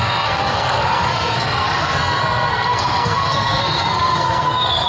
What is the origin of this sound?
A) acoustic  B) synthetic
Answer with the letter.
B